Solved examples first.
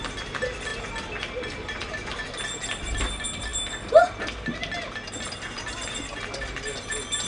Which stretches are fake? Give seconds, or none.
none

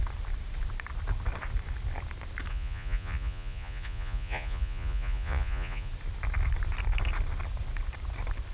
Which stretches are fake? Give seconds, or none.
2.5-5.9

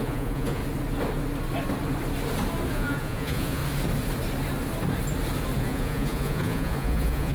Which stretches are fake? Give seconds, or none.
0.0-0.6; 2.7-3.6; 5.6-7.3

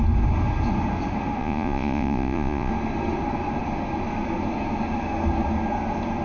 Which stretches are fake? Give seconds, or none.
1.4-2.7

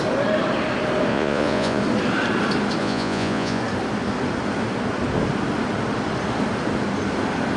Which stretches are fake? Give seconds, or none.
1.1-1.8; 2.8-3.6